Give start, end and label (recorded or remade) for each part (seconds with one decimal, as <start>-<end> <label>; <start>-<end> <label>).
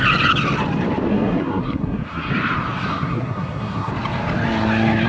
0.0-1.1 recorded; 1.1-2.3 remade; 2.3-2.9 recorded; 2.9-3.9 remade; 3.9-5.1 recorded